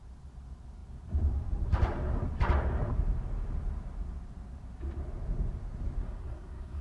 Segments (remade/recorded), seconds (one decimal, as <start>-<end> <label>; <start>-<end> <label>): 0.0-6.0 recorded; 6.0-6.8 remade